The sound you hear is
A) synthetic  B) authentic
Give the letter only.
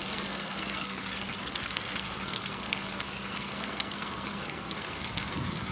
A